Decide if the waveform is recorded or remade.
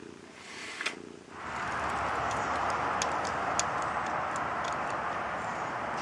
recorded